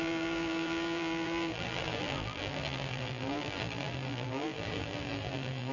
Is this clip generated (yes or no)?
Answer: yes